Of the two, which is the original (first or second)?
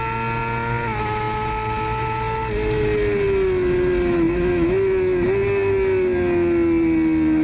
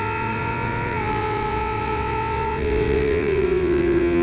first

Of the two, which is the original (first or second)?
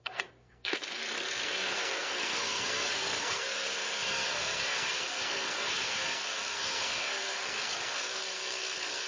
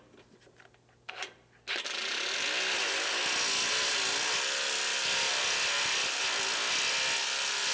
second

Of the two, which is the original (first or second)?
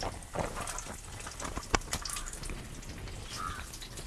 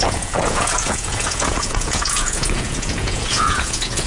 first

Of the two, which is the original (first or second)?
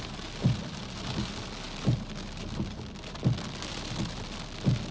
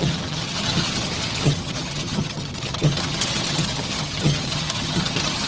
first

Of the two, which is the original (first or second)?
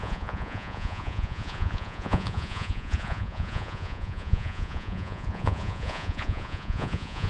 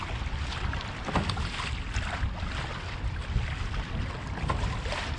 second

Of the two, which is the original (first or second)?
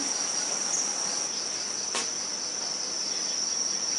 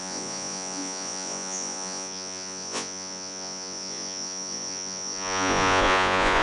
first